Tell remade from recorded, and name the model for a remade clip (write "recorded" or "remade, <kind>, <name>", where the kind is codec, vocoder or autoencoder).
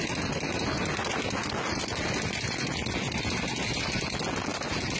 recorded